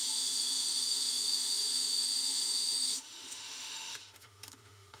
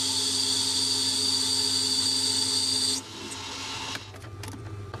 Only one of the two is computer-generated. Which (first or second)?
first